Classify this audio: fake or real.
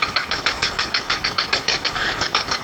fake